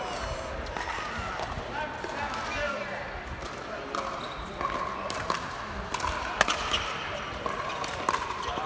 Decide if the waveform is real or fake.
real